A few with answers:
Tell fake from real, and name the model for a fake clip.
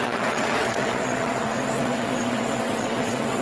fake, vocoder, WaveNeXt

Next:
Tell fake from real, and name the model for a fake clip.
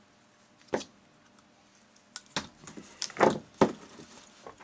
real